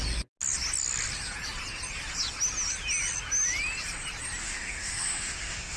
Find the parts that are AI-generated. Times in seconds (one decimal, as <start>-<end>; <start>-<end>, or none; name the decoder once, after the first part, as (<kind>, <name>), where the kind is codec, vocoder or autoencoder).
4.4-5.8 (autoencoder, DAC-VAE)